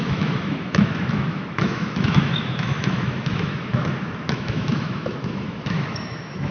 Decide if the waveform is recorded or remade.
remade